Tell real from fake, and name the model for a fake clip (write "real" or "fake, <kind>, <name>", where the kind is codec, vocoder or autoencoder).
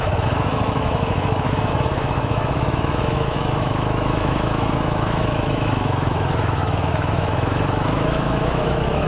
fake, autoencoder, DAC-VAE